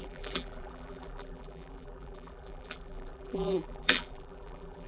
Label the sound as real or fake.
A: fake